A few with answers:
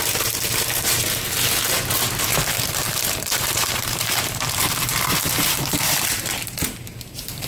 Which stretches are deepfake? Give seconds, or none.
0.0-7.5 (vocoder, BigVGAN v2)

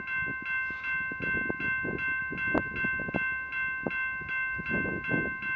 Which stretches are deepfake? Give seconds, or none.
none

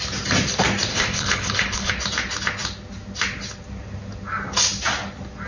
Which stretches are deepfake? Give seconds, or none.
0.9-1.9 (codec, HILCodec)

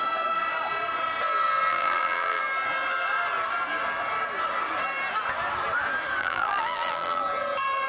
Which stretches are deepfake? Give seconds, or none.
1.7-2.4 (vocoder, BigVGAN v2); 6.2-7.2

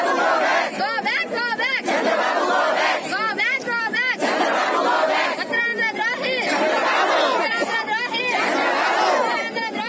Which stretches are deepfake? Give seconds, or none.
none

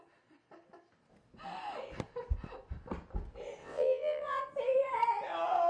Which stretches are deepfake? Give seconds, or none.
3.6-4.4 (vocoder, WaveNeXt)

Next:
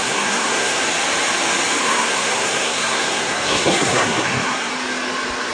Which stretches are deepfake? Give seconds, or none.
0.0-0.8 (codec, SNAC); 1.8-4.7

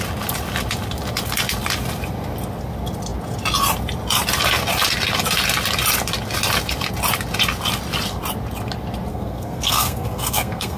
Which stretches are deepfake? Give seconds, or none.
9.1-10.8 (codec, SNAC)